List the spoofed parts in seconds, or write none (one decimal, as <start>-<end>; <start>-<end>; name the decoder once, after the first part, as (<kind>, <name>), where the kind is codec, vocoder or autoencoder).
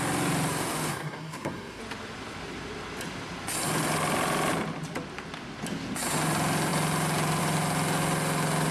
0.9-1.8 (codec, SNAC)